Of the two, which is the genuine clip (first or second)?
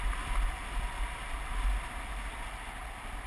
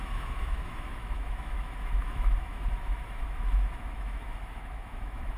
first